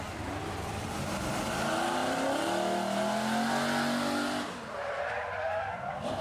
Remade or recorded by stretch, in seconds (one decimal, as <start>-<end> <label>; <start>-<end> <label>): 0.0-6.2 recorded